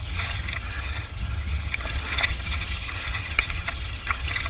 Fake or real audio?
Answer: fake